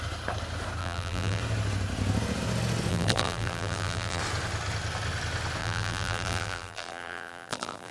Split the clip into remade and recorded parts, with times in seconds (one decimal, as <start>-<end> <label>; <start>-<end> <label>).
0.0-0.8 recorded; 0.8-1.4 remade; 1.4-2.9 recorded; 2.9-4.2 remade; 4.2-5.6 recorded; 5.6-7.9 remade

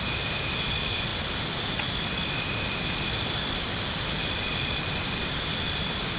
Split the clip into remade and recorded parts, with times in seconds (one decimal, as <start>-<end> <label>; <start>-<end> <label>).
0.0-6.2 recorded